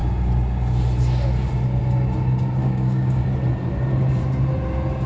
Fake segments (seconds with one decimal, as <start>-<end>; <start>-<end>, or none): 2.6-3.2